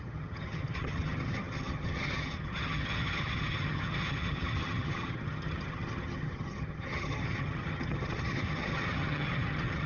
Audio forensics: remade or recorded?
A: remade